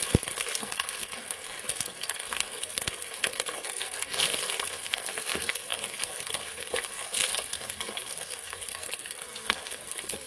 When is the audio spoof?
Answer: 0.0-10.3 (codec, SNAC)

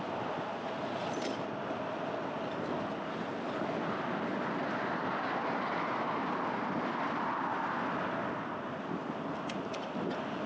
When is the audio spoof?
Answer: none

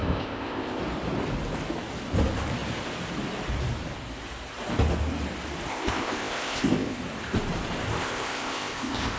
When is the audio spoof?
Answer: 0.0-0.8 (codec, ZipCodec); 5.7-7.0; 8.0-9.2

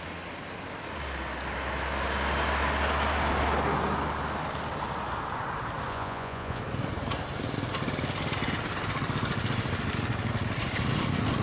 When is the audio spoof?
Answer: 5.9-6.6 (vocoder, Vocos)